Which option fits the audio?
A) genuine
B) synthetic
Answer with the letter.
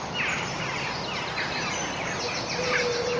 A